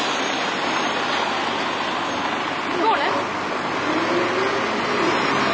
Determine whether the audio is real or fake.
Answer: real